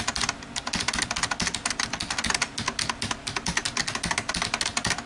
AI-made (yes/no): no